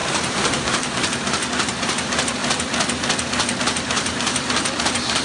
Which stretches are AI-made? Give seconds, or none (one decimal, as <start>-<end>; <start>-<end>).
0.0-2.4; 3.6-5.2